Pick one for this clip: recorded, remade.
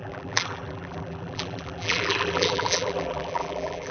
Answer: remade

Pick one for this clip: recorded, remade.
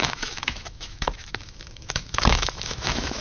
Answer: remade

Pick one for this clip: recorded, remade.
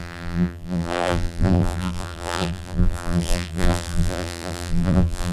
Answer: remade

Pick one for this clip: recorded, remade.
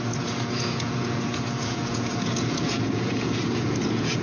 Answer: remade